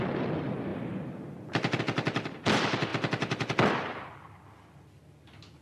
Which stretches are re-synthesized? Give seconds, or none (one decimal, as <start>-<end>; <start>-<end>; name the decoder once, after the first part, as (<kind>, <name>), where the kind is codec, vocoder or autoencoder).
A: 0.7-1.8 (vocoder, BigVGAN v2)